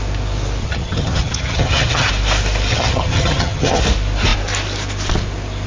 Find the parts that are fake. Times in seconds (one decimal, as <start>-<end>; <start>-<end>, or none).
0.6-2.1; 2.7-3.8